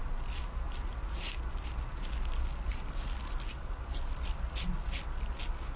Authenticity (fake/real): real